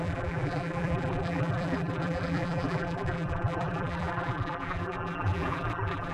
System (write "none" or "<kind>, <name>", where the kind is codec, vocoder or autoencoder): vocoder, BigVGAN v2